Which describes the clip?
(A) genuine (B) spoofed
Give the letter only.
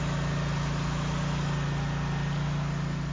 A